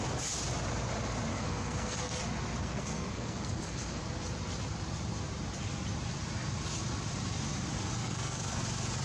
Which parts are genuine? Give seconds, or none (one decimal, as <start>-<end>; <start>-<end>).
0.0-1.3; 2.2-2.6; 4.0-8.0; 8.6-9.0